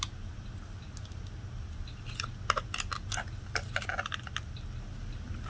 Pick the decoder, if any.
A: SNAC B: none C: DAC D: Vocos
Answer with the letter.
B